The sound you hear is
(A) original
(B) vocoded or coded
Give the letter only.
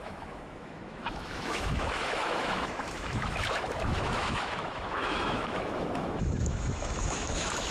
B